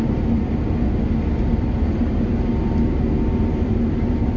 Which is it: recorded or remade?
recorded